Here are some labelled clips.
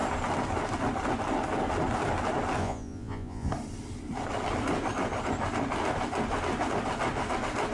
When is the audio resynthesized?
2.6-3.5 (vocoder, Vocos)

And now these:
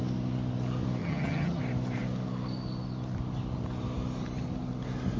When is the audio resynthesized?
1.0-1.6 (vocoder, HiFi-GAN)

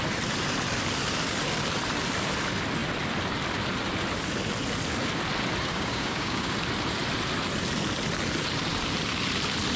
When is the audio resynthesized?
5.7-6.5 (codec, DAC)

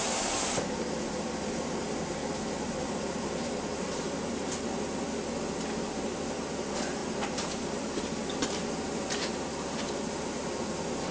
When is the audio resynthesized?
none

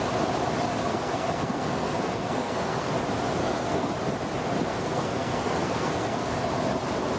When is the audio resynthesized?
0.9-2.9 (codec, SNAC); 3.4-3.9; 4.7-6.4

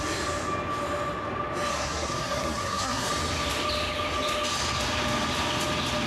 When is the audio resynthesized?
1.7-3.1 (codec, SNAC)

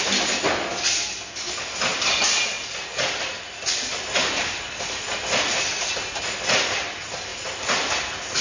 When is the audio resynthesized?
1.9-2.4 (vocoder, BigVGAN v2)